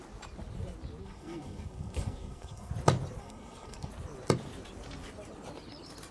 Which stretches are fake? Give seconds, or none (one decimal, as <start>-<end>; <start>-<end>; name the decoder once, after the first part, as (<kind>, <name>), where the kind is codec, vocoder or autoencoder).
1.0-2.7 (codec, SNAC); 3.2-3.9